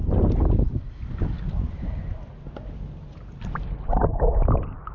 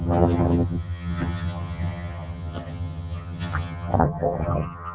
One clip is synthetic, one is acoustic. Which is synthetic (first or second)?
second